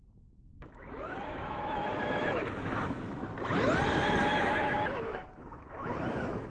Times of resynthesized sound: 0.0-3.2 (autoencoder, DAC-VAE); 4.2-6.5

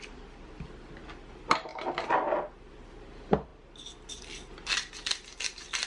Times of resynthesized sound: none

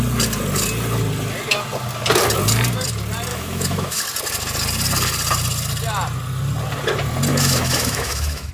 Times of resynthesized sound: 3.3-4.0 (autoencoder, DAC-VAE); 7.3-8.5

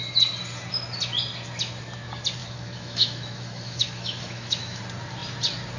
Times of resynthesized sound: 2.4-4.8 (autoencoder, DAC-VAE)

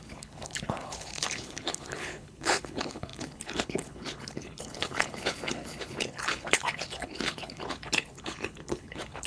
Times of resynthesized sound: 0.0-9.3 (codec, HILCodec)

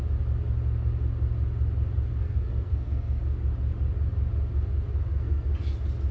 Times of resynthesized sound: 2.2-3.2 (codec, SNAC); 4.9-5.5